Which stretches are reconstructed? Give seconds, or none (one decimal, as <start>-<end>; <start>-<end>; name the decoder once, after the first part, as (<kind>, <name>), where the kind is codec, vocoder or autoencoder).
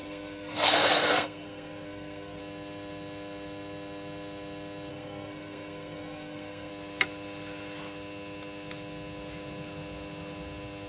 0.0-2.4 (codec, SNAC); 4.9-6.7